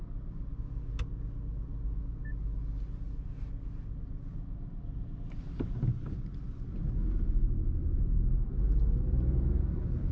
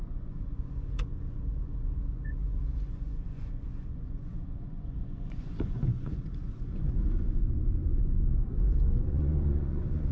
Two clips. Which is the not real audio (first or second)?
second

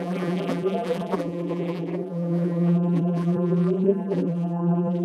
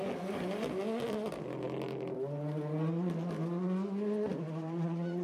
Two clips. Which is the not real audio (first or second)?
first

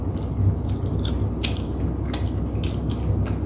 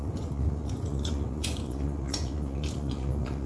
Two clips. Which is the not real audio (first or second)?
second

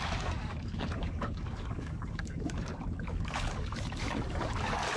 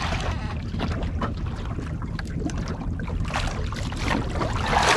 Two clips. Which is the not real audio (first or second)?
first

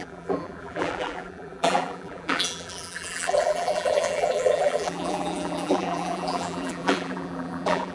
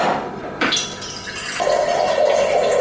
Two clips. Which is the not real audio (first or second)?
first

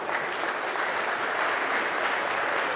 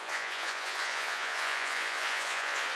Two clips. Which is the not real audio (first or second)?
second